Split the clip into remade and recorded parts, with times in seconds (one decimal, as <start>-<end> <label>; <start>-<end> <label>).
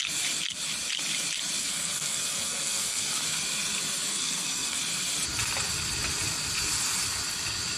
0.0-1.6 recorded; 1.6-3.2 remade; 3.2-4.1 recorded; 4.1-4.8 remade; 4.8-7.8 recorded